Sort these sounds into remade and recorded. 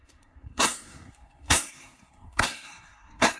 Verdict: remade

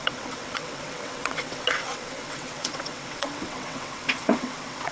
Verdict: remade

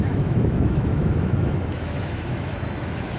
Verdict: remade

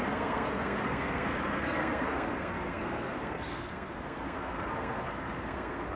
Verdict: remade